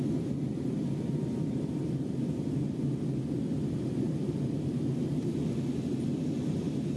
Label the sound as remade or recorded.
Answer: recorded